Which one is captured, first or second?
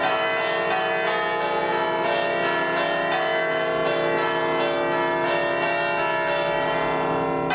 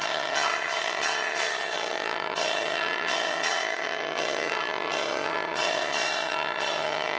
first